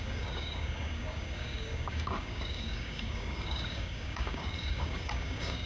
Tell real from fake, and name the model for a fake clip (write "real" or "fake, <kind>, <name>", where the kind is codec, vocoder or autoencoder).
fake, codec, DAC